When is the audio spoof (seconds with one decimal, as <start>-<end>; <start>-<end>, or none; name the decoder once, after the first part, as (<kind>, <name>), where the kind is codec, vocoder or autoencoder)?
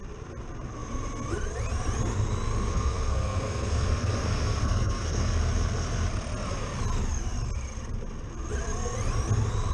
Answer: 2.7-5.4 (codec, SNAC)